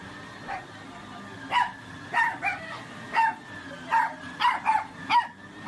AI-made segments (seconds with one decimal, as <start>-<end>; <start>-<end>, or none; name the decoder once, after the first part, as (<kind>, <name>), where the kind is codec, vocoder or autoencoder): none